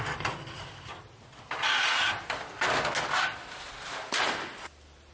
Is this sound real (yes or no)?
yes